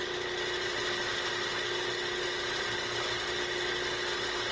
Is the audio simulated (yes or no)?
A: no